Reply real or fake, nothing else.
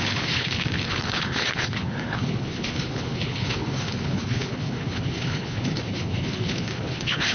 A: fake